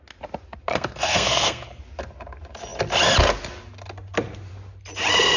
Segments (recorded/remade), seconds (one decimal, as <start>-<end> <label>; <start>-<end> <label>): 0.0-0.7 recorded; 0.7-1.8 remade; 1.8-5.4 recorded